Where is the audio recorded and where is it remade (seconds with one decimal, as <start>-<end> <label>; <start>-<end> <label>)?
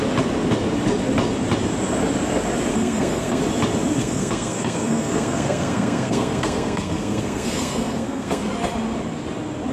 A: 0.0-2.7 recorded; 2.7-3.4 remade; 3.4-4.0 recorded; 4.0-8.5 remade; 8.5-9.7 recorded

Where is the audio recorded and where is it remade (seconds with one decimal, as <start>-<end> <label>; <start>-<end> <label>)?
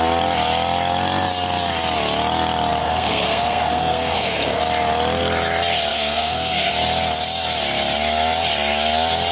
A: 0.0-2.8 recorded; 2.8-4.6 remade; 4.6-5.9 recorded; 5.9-6.7 remade; 6.7-9.3 recorded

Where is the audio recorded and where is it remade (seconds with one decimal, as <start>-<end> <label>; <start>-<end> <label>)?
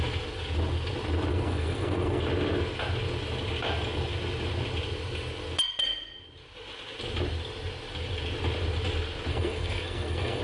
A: 0.0-1.3 recorded; 1.3-2.2 remade; 2.2-9.3 recorded; 9.3-10.4 remade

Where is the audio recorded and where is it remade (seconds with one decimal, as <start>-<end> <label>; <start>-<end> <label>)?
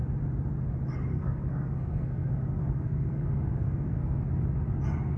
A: 0.0-1.1 recorded; 1.1-4.2 remade; 4.2-5.2 recorded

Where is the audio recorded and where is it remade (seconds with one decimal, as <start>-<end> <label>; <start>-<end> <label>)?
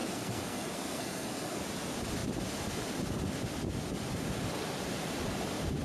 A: 0.0-1.6 remade; 1.6-5.8 recorded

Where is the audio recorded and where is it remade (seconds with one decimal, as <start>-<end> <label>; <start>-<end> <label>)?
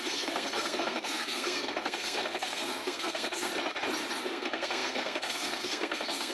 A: 0.0-3.5 remade; 3.5-4.2 recorded; 4.2-6.3 remade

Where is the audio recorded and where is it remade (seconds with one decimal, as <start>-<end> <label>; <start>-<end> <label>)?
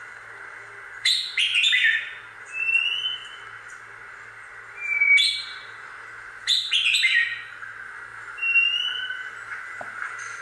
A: 0.0-10.4 recorded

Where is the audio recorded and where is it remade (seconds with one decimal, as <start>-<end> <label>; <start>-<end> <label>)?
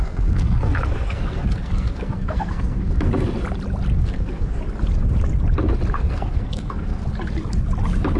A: 0.0-3.1 remade; 3.1-4.0 recorded; 4.0-4.6 remade; 4.6-5.9 recorded; 5.9-7.0 remade; 7.0-8.2 recorded